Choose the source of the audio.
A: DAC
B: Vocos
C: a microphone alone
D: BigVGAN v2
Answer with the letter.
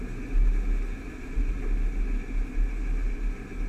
C